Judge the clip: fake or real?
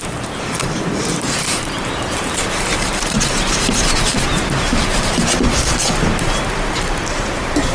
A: fake